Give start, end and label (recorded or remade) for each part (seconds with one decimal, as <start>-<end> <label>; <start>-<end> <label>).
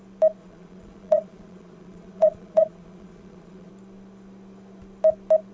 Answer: 0.0-0.4 recorded; 0.4-3.7 remade; 3.7-5.5 recorded